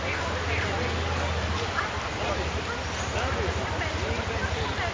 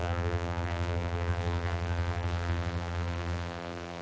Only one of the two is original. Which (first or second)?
first